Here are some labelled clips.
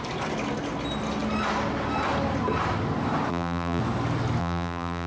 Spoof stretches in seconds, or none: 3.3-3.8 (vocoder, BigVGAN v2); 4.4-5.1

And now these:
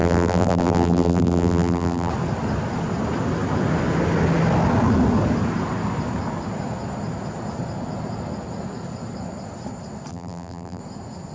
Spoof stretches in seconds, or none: 0.0-2.1 (vocoder, BigVGAN v2); 10.1-10.8